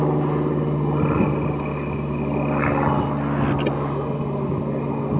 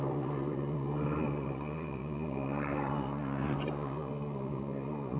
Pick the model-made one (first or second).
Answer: second